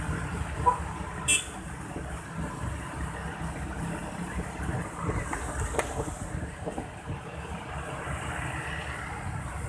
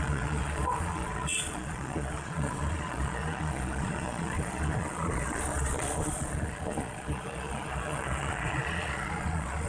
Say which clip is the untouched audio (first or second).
first